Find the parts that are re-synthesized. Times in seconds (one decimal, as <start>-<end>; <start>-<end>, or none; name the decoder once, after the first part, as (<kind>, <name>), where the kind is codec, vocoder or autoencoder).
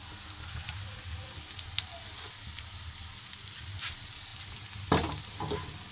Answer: none